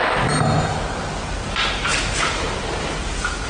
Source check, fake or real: real